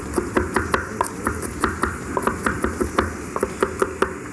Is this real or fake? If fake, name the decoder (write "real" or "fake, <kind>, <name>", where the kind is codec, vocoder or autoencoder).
real